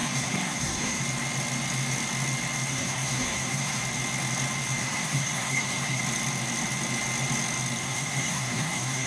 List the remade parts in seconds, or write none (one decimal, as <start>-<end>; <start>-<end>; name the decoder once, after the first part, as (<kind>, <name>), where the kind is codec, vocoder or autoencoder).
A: 0.0-1.0 (codec, SNAC); 2.7-3.8; 4.8-6.0; 7.8-9.1